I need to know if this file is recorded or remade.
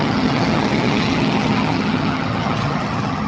remade